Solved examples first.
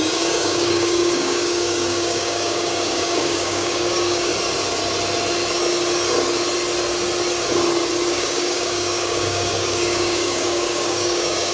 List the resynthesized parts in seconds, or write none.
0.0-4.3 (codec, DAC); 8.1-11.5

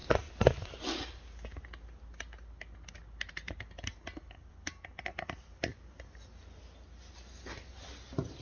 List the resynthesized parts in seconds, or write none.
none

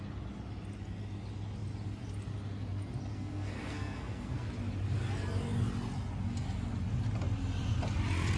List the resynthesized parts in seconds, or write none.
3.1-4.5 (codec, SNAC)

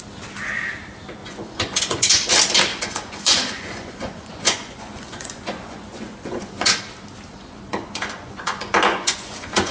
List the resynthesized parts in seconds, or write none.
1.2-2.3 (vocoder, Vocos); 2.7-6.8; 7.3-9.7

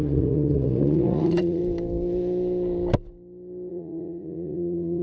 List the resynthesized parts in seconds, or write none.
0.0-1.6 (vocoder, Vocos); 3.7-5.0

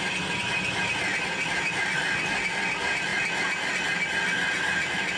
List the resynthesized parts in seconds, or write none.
none

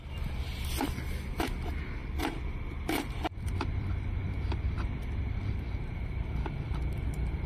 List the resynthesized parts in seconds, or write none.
2.0-5.5 (vocoder, BigVGAN v2)

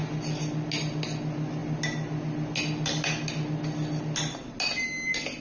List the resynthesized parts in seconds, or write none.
none